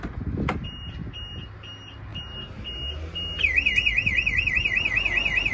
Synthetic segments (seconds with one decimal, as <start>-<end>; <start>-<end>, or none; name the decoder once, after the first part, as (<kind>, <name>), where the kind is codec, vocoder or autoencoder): none

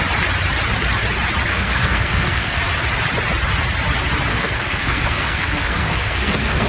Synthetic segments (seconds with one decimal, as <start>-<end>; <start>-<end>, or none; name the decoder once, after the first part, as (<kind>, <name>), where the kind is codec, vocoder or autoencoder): 1.5-2.6 (codec, SNAC); 4.3-6.7

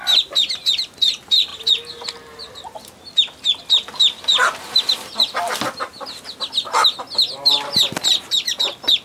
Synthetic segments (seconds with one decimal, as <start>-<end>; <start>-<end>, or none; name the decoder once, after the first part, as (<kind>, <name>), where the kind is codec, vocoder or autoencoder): none

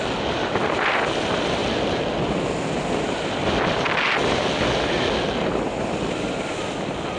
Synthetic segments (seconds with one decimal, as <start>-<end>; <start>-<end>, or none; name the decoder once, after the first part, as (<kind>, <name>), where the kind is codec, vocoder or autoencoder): none

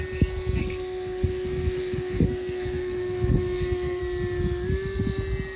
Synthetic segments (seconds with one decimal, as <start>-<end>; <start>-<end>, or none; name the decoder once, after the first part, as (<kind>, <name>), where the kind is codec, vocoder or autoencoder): 0.6-4.0 (codec, SNAC)

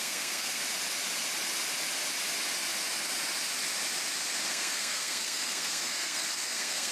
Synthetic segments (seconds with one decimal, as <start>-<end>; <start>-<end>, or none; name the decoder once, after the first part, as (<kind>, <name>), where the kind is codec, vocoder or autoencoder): 0.0-0.6 (codec, SNAC); 4.5-6.9

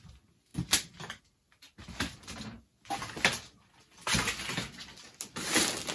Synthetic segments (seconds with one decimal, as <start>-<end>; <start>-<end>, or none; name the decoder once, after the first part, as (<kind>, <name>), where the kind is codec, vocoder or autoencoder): none

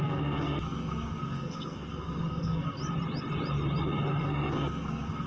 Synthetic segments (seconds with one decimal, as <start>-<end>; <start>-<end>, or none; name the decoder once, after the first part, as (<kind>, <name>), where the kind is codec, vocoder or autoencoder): 0.0-2.8 (codec, SNAC); 4.2-5.3